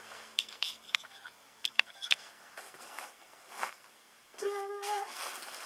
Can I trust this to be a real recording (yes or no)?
no